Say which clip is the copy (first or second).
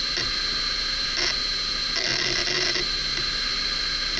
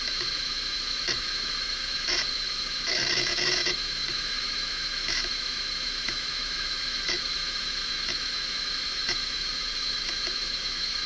second